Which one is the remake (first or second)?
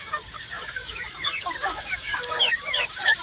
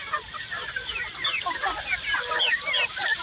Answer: first